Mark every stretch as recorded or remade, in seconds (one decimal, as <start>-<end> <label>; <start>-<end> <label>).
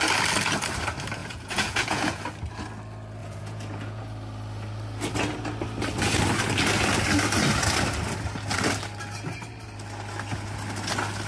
0.0-1.2 recorded; 1.2-2.2 remade; 2.2-3.2 recorded; 3.2-4.0 remade; 4.0-11.3 recorded